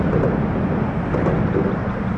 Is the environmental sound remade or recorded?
recorded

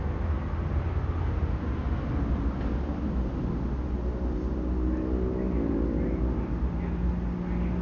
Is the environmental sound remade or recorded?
recorded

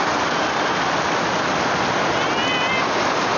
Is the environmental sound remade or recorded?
recorded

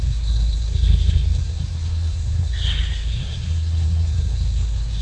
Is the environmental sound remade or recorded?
remade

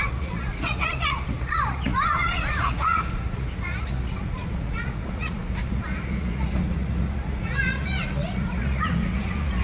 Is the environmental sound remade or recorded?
remade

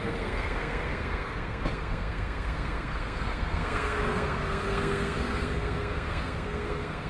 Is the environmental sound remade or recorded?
remade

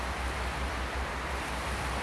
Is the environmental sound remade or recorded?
recorded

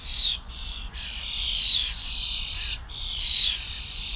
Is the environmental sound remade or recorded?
remade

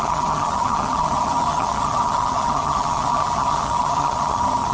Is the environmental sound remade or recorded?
remade